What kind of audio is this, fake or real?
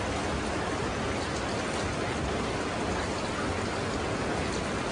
real